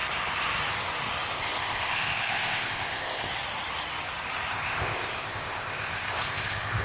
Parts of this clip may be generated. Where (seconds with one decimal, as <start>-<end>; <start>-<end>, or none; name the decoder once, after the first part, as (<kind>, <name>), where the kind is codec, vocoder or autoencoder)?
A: 1.3-3.3 (codec, ZipCodec); 4.5-6.8